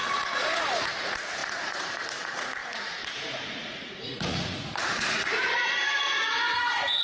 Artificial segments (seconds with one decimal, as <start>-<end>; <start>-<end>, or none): 0.0-7.0